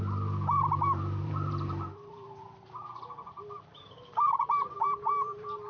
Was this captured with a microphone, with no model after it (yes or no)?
no